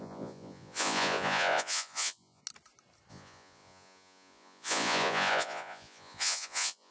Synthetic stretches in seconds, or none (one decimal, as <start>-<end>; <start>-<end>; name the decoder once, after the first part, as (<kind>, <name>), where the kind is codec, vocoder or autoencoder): 0.0-2.4 (vocoder, Vocos); 3.1-6.9